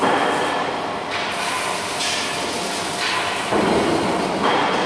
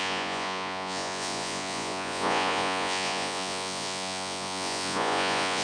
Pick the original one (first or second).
first